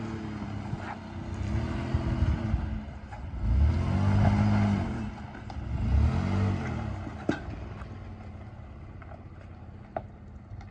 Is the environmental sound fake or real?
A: real